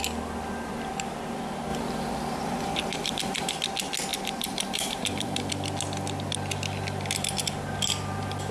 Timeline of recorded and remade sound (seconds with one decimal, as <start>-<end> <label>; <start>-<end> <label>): 0.0-1.7 recorded; 1.7-3.5 remade; 3.5-4.1 recorded; 4.1-5.5 remade; 5.5-8.5 recorded